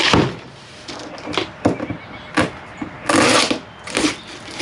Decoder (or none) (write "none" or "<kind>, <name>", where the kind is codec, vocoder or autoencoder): none